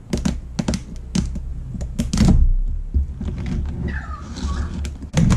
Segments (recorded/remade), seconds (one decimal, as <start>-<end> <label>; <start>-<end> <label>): 0.0-1.5 recorded; 1.5-2.0 remade; 2.0-5.4 recorded

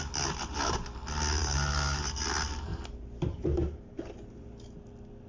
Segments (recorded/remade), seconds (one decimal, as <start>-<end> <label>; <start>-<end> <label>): 0.0-1.4 recorded; 1.4-2.3 remade; 2.3-2.7 recorded; 2.7-4.0 remade; 4.0-5.3 recorded